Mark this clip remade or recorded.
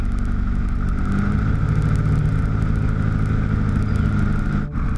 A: recorded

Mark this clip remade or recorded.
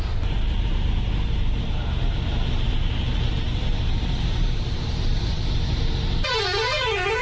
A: remade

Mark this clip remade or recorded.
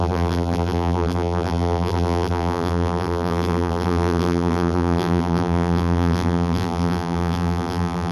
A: remade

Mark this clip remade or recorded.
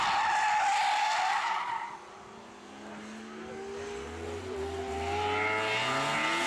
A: recorded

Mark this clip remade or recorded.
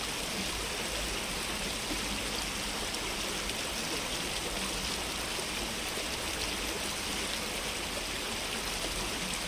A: recorded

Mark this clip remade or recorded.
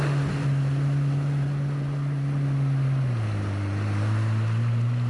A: recorded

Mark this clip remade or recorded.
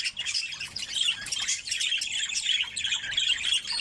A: remade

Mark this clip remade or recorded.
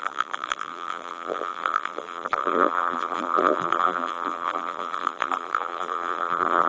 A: remade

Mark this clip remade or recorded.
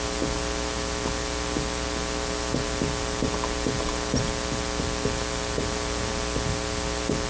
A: recorded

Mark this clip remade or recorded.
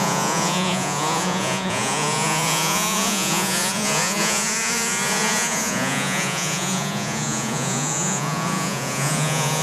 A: remade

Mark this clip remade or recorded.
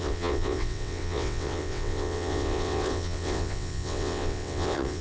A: remade